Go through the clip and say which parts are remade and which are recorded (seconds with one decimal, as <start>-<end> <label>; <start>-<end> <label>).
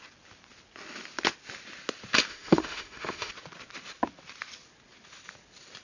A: 0.0-2.3 recorded; 2.3-3.3 remade; 3.3-5.8 recorded